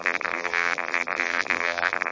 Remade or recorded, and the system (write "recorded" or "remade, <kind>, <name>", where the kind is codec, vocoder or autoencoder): remade, vocoder, BigVGAN v2